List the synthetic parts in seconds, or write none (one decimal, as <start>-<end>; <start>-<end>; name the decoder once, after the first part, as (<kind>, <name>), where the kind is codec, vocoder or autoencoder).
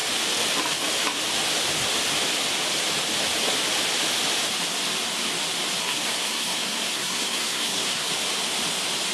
5.8-8.1 (codec, SNAC)